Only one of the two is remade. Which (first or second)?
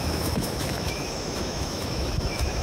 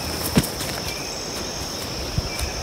first